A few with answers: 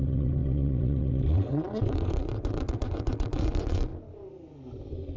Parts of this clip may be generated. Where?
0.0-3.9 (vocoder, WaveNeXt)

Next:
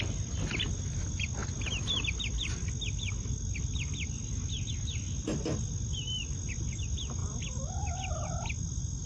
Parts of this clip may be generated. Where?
none

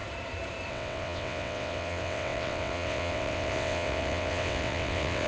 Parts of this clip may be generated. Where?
0.7-5.3 (vocoder, WaveNeXt)

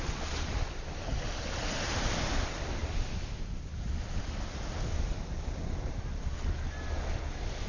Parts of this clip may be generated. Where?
none

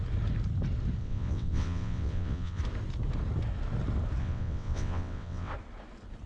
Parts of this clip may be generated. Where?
1.0-2.6 (vocoder, WaveNeXt); 4.2-5.5

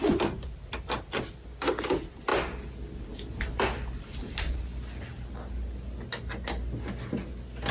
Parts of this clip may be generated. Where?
none

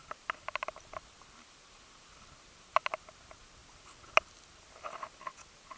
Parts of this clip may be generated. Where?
none

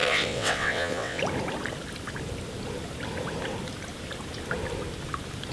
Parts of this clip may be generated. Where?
0.0-1.2 (vocoder, WaveNeXt)